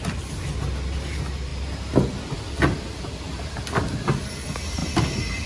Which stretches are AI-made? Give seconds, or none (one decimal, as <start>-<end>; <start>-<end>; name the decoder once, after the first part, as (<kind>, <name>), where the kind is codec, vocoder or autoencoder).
none